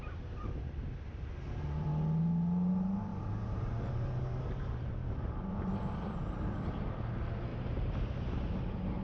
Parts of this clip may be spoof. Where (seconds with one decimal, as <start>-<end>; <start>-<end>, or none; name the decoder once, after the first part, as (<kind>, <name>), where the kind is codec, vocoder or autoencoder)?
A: 0.0-1.9 (vocoder, BigVGAN v2); 2.7-9.0